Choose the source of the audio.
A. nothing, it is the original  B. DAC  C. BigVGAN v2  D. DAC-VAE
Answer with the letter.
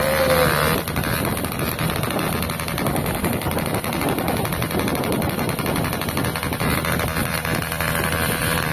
A